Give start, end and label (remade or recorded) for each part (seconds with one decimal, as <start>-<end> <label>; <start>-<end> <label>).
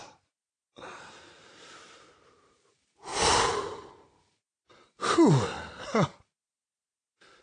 0.0-3.1 remade; 3.1-4.0 recorded; 4.0-4.7 remade; 4.7-5.7 recorded; 5.7-7.4 remade